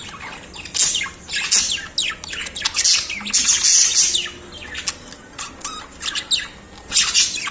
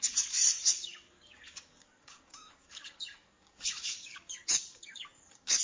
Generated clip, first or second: second